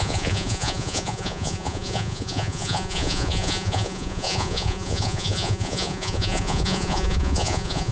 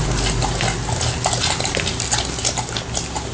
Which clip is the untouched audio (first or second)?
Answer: second